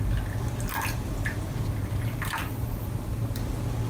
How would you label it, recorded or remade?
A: recorded